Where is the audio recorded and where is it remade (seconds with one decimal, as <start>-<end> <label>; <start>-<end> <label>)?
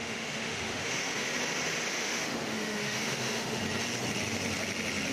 0.0-1.3 remade; 1.3-1.9 recorded; 1.9-3.6 remade; 3.6-5.1 recorded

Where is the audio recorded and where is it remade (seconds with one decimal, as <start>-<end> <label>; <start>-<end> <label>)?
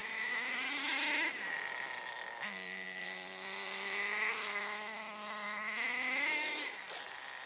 0.0-7.5 recorded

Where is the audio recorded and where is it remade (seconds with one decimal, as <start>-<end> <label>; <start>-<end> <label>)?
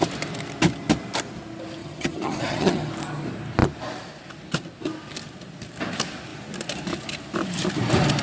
0.0-1.8 recorded; 1.8-2.9 remade; 2.9-8.2 recorded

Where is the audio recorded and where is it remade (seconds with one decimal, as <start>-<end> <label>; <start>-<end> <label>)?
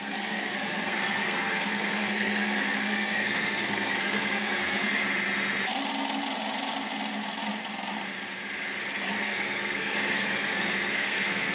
0.0-5.0 remade; 5.0-9.2 recorded; 9.2-11.5 remade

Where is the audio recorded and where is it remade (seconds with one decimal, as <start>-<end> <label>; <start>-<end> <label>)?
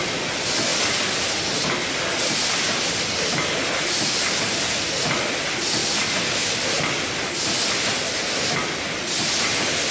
0.0-9.9 recorded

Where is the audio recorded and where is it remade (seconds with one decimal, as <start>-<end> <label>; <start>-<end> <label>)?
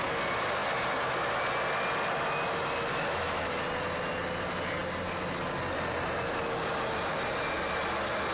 0.0-2.9 recorded; 2.9-3.5 remade; 3.5-8.3 recorded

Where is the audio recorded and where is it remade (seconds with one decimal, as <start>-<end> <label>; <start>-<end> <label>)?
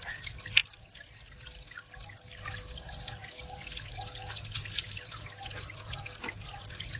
0.0-7.0 recorded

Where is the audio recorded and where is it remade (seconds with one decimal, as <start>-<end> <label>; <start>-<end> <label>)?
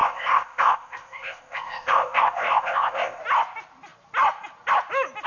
0.0-3.2 remade; 3.2-5.3 recorded